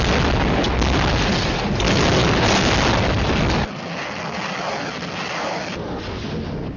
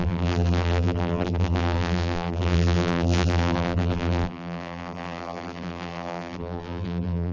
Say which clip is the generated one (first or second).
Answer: second